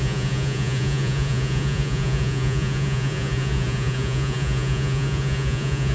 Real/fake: fake